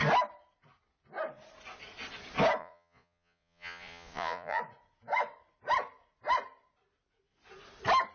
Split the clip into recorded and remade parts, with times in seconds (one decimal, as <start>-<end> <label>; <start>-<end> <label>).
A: 0.0-2.6 recorded; 2.6-4.6 remade; 4.6-8.1 recorded